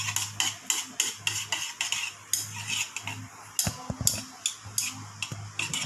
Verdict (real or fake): real